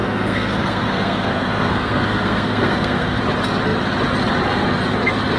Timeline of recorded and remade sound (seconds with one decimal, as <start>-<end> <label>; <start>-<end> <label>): 0.0-3.2 remade; 3.2-5.4 recorded